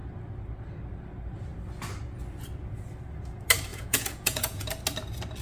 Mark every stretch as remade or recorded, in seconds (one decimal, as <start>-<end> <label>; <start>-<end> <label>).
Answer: 0.0-3.7 recorded; 3.7-4.7 remade; 4.7-5.4 recorded

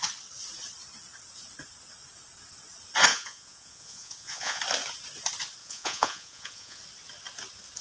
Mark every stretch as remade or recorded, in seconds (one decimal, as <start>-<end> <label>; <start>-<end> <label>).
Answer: 0.0-3.1 recorded; 3.1-4.6 remade; 4.6-5.6 recorded; 5.6-6.8 remade; 6.8-7.8 recorded

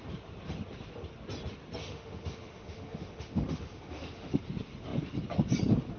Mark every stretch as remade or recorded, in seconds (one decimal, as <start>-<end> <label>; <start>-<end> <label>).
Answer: 0.0-1.8 recorded; 1.8-4.4 remade; 4.4-6.0 recorded